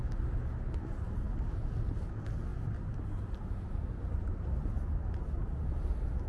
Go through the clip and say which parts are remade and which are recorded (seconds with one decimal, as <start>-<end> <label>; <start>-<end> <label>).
0.0-6.3 recorded